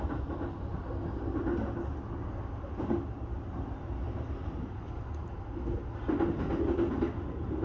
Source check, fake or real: real